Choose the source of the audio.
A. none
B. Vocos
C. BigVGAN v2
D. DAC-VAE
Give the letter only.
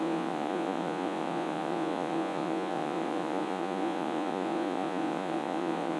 B